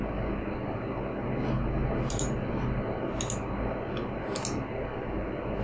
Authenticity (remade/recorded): recorded